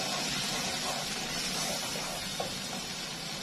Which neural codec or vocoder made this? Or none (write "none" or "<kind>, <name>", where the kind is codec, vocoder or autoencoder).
none